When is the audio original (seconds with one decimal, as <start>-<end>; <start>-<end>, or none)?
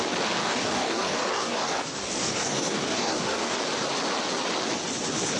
0.0-0.4; 3.6-5.4